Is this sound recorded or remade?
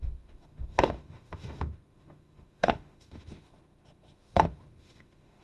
remade